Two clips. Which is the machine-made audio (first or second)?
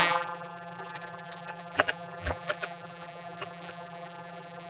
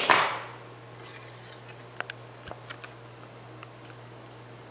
first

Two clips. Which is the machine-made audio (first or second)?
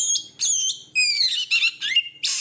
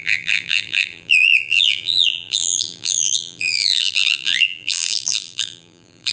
second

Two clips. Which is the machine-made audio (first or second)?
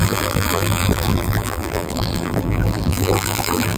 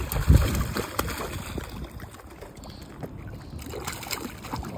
first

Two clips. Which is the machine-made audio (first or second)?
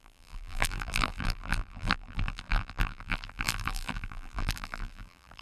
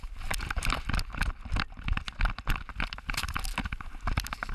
first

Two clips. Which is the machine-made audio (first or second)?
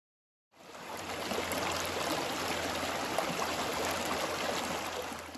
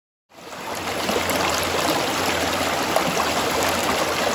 second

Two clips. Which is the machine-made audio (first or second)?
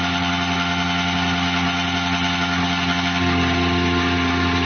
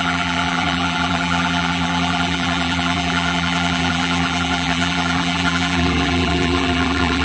second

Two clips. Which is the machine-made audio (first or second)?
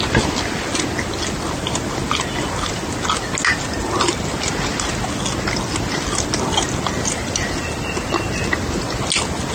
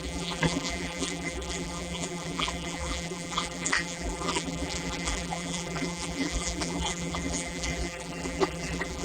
second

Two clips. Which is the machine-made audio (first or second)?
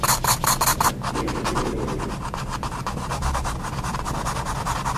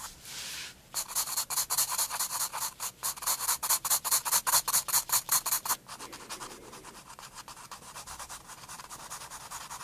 second